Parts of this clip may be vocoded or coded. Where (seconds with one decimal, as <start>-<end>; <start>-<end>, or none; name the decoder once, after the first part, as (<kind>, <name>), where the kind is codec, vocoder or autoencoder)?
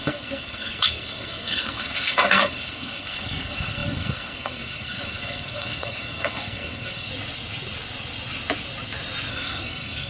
0.0-7.1 (codec, SNAC); 9.3-10.1